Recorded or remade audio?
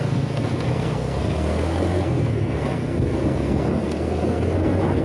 remade